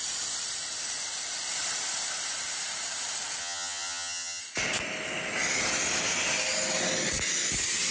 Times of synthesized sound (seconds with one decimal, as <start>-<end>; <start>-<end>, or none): 3.4-4.4